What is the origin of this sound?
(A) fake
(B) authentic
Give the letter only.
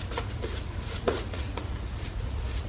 A